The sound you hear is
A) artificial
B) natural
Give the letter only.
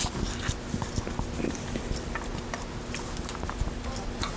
B